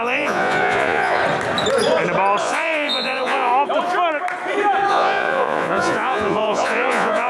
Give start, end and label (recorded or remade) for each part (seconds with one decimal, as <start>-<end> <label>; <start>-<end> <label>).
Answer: 0.0-1.2 remade; 1.2-2.4 recorded; 2.4-3.5 remade; 3.5-4.9 recorded; 4.9-7.3 remade